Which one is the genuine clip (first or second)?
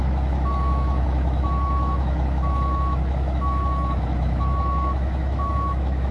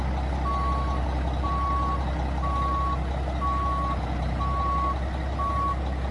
second